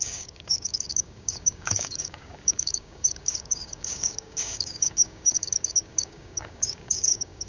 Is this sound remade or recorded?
remade